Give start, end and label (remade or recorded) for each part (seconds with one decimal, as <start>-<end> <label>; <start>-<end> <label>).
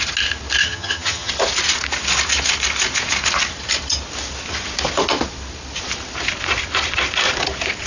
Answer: 0.0-0.6 recorded; 0.6-1.3 remade; 1.3-7.9 recorded